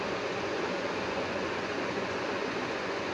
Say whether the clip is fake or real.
fake